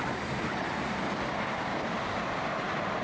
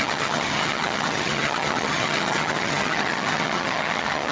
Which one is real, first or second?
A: first